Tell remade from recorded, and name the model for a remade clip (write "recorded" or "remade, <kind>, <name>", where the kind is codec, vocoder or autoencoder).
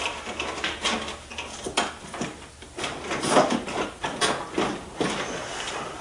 recorded